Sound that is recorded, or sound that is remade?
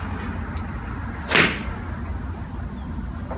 recorded